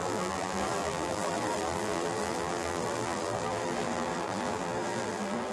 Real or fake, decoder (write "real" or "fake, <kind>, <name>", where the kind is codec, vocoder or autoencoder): fake, vocoder, BigVGAN v2